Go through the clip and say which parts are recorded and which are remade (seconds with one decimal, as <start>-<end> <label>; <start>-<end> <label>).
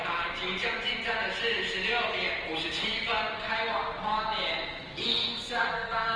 0.0-5.0 recorded; 5.0-6.2 remade